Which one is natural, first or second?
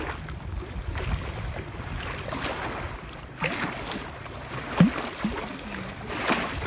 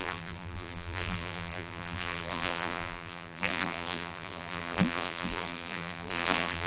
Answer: first